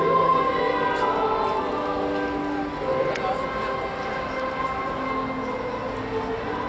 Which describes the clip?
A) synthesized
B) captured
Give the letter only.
B